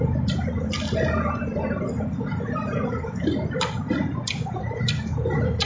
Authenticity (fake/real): real